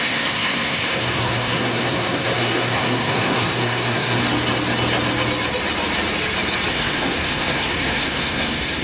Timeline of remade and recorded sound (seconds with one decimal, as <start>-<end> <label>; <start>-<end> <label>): 0.0-4.2 remade; 4.2-6.7 recorded; 6.7-8.8 remade